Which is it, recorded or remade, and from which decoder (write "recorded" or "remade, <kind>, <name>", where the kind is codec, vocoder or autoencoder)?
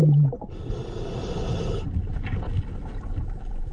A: recorded